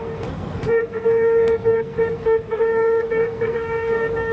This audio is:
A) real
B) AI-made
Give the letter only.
B